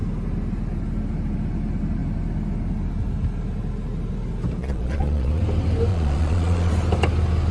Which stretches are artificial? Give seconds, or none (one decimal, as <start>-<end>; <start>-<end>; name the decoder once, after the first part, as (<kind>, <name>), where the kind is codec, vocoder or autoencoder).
4.6-5.4 (vocoder, Vocos); 5.9-6.7